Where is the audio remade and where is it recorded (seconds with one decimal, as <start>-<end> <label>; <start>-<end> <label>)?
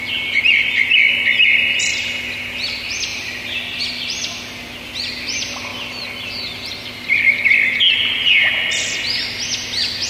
0.0-10.1 recorded